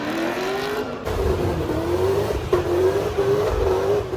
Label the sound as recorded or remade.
remade